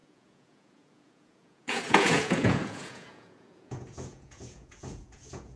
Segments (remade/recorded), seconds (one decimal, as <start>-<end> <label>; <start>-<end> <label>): 0.0-5.6 remade